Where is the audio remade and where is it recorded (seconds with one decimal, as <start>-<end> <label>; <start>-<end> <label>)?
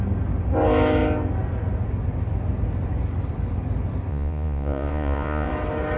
0.0-4.1 recorded; 4.1-5.5 remade; 5.5-6.0 recorded